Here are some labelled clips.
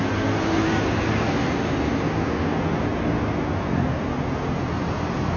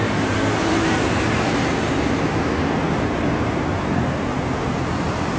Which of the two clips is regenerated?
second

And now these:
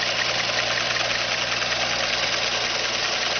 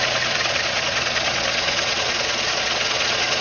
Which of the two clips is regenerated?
second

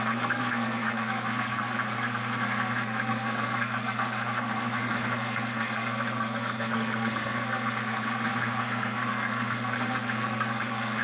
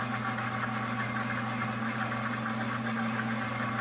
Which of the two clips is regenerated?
first